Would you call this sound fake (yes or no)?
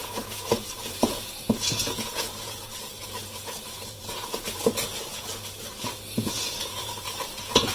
yes